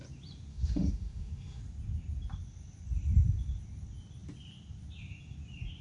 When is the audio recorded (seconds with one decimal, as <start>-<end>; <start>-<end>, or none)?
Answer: 0.0-0.5; 1.6-5.8

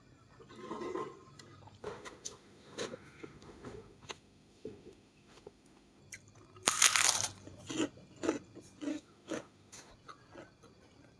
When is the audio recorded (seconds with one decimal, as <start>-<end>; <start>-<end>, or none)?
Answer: 0.0-1.8; 6.0-8.9; 9.9-11.2

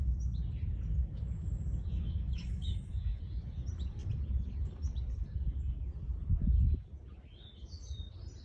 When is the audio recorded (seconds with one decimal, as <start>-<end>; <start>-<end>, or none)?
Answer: 0.0-1.0; 3.2-8.4

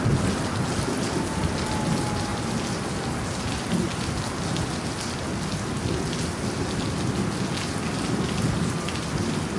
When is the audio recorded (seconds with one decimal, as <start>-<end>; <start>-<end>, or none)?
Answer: 0.0-9.6

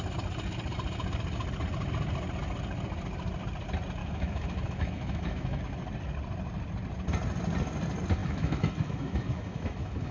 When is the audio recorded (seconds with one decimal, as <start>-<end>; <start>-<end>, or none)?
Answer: 0.0-4.0; 5.6-8.2

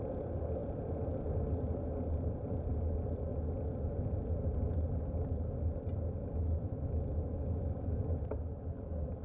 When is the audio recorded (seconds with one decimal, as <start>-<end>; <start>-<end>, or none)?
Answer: 0.0-6.2; 8.0-9.2

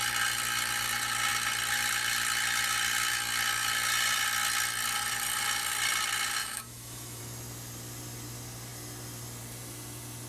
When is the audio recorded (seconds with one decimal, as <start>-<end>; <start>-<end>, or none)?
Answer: 0.0-6.4; 7.2-10.3